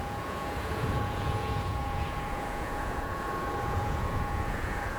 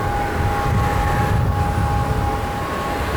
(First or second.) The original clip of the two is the second